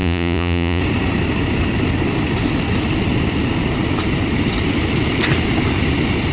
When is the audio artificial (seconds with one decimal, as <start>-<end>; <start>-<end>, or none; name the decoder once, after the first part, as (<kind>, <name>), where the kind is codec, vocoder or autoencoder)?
0.0-0.8 (vocoder, Vocos)